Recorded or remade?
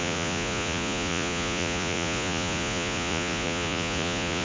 remade